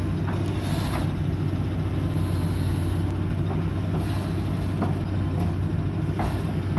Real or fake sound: real